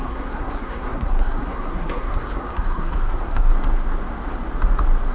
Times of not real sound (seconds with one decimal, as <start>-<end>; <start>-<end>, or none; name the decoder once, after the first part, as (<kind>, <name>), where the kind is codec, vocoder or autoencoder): 0.0-3.5 (codec, SNAC)